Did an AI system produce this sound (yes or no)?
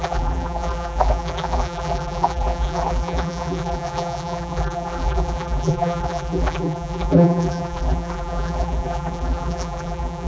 yes